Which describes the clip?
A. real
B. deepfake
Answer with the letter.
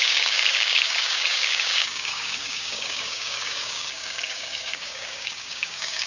B